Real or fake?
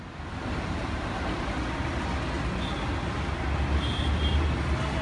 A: real